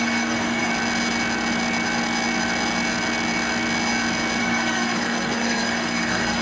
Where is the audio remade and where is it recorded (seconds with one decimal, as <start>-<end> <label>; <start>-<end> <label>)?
0.0-0.7 remade; 0.7-4.4 recorded; 4.4-6.4 remade